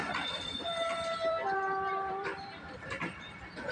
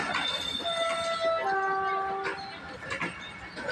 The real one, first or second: second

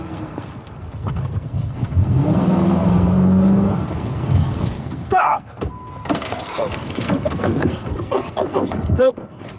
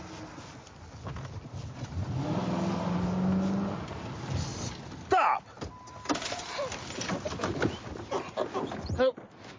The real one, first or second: second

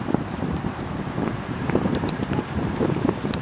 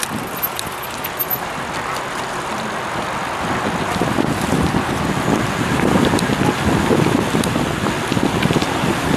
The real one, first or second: second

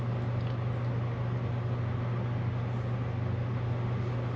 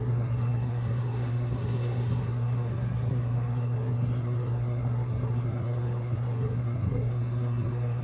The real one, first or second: first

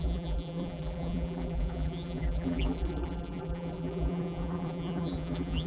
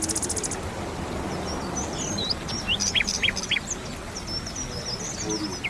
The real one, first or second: second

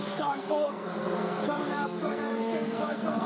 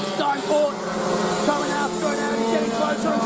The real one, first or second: second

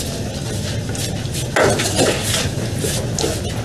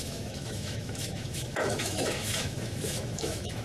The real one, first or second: first